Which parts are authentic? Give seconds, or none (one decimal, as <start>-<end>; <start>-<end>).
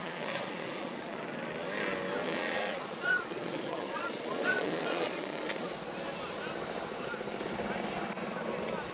1.2-2.2; 5.7-8.9